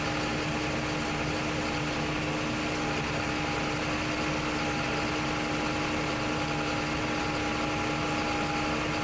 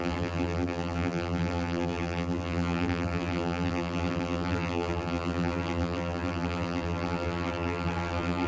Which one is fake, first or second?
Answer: second